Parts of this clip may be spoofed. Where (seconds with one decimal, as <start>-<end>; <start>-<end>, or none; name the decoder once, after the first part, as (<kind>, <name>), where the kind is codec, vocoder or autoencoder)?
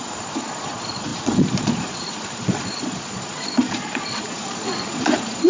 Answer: 0.0-5.5 (vocoder, Vocos)